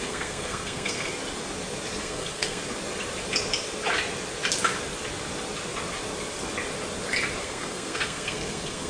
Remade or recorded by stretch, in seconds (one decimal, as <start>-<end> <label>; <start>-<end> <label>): 0.0-1.1 remade; 1.1-2.0 recorded; 2.0-2.6 remade; 2.6-7.4 recorded; 7.4-8.9 remade